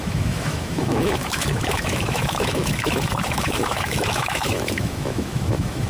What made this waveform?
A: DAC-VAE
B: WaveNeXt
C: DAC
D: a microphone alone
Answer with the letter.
A